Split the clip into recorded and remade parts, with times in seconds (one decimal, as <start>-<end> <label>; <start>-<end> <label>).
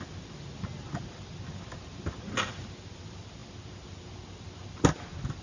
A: 0.0-5.4 recorded